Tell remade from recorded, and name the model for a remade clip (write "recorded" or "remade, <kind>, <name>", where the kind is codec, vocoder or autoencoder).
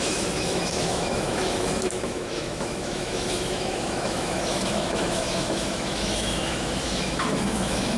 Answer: remade, autoencoder, DAC-VAE